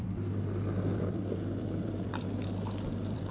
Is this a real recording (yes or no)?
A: no